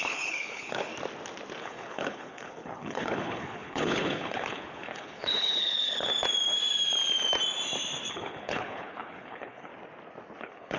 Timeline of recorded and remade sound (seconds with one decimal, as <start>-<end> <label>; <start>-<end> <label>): 0.0-0.9 remade; 0.9-1.6 recorded; 1.6-6.1 remade; 6.1-8.1 recorded; 8.1-9.7 remade; 9.7-10.4 recorded; 10.4-10.8 remade